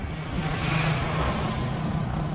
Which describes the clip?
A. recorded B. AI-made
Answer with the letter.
A